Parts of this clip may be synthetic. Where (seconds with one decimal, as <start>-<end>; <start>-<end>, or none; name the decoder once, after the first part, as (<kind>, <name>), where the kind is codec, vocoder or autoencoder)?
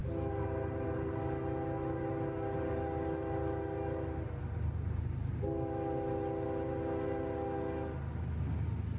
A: none